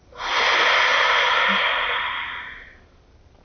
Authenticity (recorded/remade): recorded